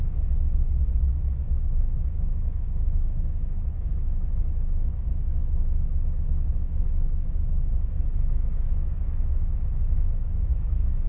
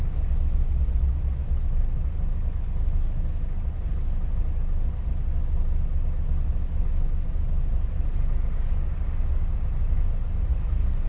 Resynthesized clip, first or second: first